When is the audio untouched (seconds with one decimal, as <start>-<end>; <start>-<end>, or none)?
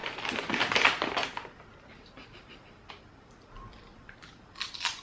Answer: 0.0-5.0